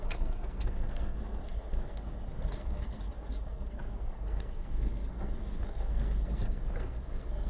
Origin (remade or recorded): remade